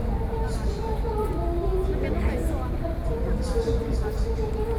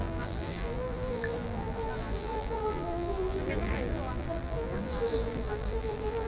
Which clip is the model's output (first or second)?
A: second